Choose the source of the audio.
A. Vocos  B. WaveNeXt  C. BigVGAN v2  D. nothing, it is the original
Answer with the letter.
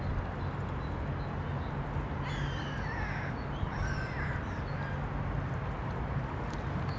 D